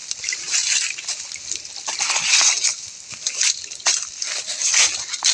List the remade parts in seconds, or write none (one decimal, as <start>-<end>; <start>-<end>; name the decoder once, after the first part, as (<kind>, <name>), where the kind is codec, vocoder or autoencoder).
none